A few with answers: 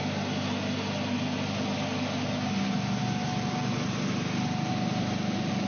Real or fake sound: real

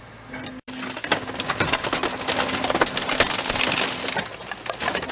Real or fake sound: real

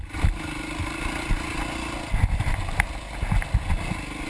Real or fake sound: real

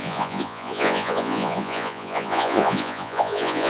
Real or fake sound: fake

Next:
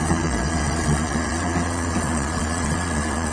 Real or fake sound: fake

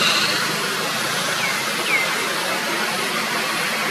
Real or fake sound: real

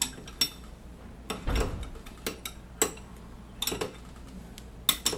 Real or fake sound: real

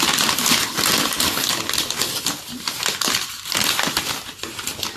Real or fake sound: real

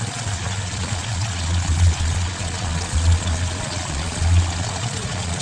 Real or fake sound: fake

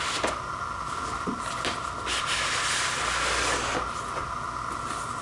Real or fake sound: real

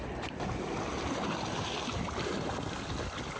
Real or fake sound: real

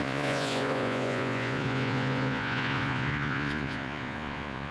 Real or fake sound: fake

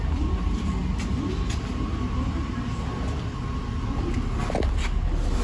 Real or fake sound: real